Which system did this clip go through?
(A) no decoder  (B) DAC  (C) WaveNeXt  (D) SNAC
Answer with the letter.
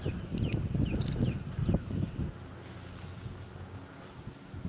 A